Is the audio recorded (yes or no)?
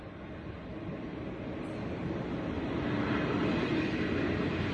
yes